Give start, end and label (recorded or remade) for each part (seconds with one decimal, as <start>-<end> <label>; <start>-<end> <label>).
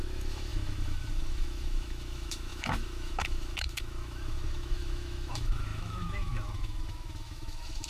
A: 0.0-7.9 remade